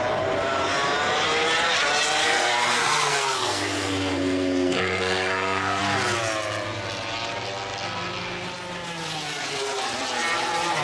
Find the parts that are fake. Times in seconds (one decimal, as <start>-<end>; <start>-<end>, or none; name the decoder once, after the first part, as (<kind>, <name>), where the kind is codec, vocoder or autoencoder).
2.2-5.8 (codec, SNAC)